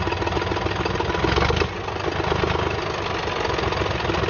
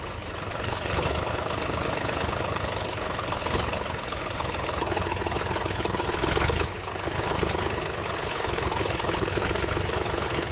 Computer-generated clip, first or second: second